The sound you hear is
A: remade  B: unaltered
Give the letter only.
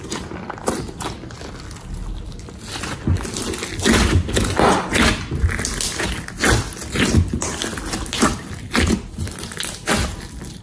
B